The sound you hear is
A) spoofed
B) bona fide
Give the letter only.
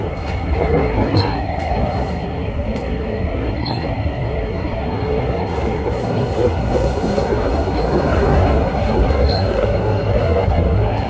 A